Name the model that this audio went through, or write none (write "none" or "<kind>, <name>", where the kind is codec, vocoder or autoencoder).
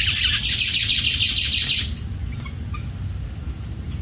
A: none